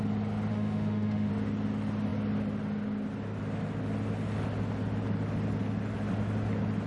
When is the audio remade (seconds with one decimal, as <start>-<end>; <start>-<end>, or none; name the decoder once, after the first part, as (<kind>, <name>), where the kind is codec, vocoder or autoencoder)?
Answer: 0.5-1.3 (autoencoder, DAC-VAE)